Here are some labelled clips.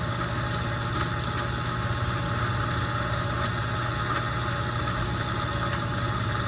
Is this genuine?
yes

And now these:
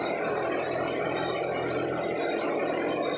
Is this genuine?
yes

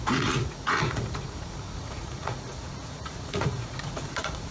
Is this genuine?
no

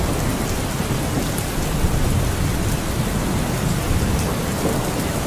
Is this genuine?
yes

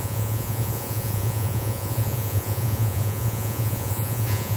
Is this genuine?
no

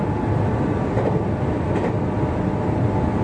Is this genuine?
yes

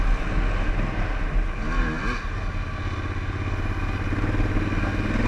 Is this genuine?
yes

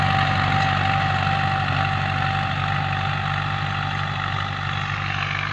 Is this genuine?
yes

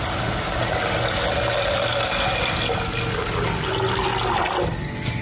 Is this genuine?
yes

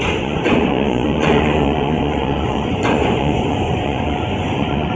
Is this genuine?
no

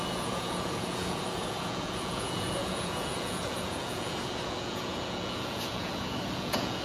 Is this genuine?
no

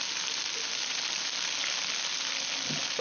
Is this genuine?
yes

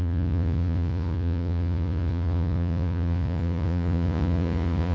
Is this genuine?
no